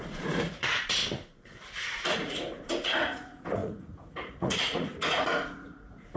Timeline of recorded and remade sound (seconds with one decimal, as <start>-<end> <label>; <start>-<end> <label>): 0.0-1.0 remade; 1.0-1.6 recorded; 1.6-6.2 remade